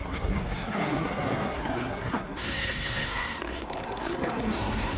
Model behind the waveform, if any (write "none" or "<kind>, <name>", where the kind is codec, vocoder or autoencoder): codec, SNAC